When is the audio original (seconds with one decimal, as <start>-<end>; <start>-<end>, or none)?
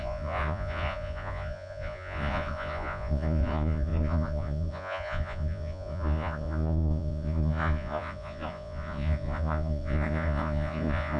none